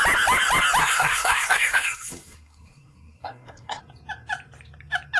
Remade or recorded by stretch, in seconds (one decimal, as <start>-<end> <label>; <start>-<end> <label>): 0.0-0.8 recorded; 0.8-3.8 remade; 3.8-5.2 recorded